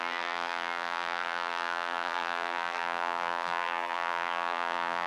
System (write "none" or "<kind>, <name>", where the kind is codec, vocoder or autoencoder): vocoder, BigVGAN v2